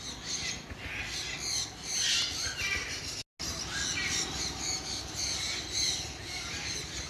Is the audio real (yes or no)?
yes